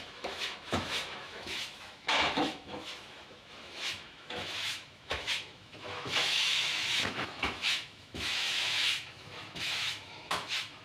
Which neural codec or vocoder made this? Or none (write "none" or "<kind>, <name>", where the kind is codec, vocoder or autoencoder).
autoencoder, DAC-VAE